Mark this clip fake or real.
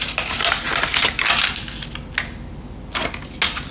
real